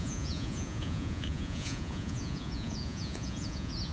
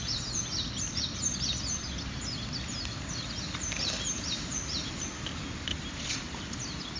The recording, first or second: second